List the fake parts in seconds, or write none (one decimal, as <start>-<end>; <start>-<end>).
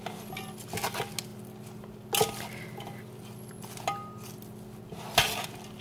none